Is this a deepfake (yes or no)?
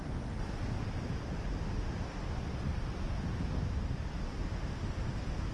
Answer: no